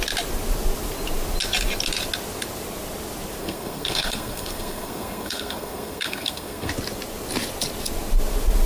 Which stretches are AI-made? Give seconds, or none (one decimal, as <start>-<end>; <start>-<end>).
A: 3.4-6.7